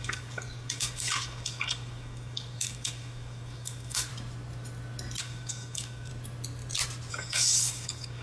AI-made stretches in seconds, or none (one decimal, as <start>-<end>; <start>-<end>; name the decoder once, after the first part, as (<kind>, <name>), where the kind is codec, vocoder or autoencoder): 0.0-4.1 (codec, DAC); 5.2-6.1; 7.1-8.2